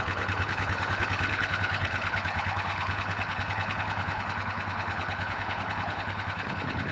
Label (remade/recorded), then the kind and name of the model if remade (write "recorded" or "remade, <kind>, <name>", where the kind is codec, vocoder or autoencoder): remade, codec, HILCodec